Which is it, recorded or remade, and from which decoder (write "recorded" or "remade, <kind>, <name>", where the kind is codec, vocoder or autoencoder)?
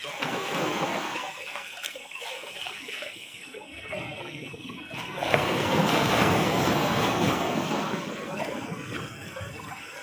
remade, codec, SNAC